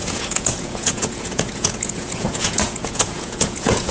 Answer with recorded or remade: remade